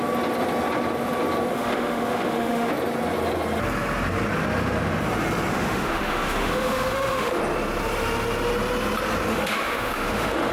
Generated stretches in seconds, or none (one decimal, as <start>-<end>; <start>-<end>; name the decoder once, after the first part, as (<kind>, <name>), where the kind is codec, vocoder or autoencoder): 1.5-2.7 (autoencoder, DAC-VAE); 5.5-7.4; 9.3-10.5